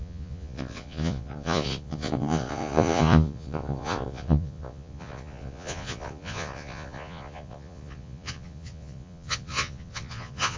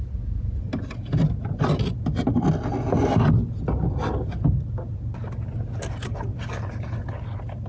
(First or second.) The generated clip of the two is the first